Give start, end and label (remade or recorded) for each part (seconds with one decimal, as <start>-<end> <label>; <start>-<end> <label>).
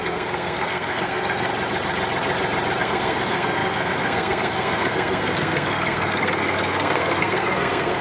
0.0-1.5 remade; 1.5-2.8 recorded; 2.8-8.0 remade